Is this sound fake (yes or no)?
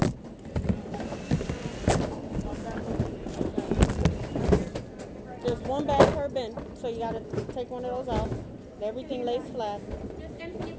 no